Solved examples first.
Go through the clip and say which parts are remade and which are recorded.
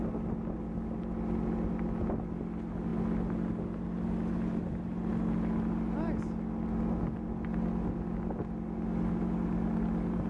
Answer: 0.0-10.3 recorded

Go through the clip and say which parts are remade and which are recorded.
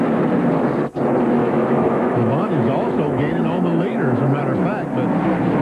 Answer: 0.0-1.4 recorded; 1.4-4.4 remade; 4.4-5.6 recorded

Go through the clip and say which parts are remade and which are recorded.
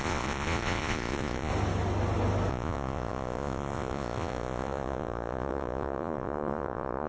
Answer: 0.0-1.5 remade; 1.5-2.5 recorded; 2.5-7.1 remade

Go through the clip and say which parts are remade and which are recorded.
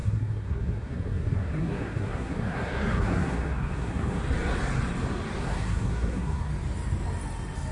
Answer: 0.0-4.2 remade; 4.2-5.4 recorded; 5.4-6.5 remade; 6.5-7.7 recorded